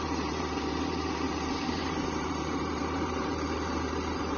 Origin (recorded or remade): remade